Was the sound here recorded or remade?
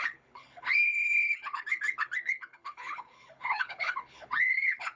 remade